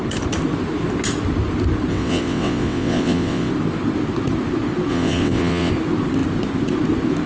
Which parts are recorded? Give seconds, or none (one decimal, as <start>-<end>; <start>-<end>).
0.0-1.9; 3.5-4.9; 5.7-7.3